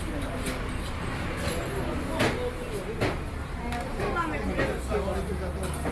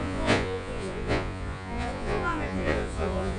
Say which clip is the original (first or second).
first